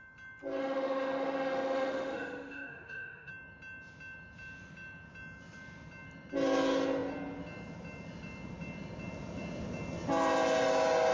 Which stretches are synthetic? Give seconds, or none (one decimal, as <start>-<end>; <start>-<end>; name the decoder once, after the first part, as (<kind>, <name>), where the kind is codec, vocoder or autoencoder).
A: 0.6-3.3 (autoencoder, DAC-VAE)